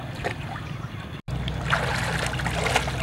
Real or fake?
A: real